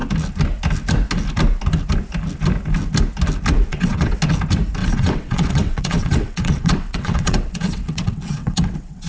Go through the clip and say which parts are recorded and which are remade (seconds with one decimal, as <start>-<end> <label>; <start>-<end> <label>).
0.0-3.7 recorded; 3.7-4.2 remade; 4.2-4.8 recorded; 4.8-9.1 remade